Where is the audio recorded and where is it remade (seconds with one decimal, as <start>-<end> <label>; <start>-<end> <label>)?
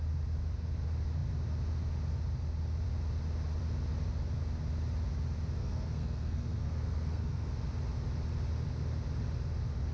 0.0-5.6 recorded; 5.6-7.5 remade; 7.5-9.9 recorded